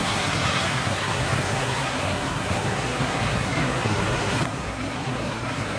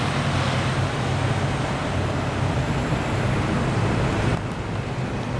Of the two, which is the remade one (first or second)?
first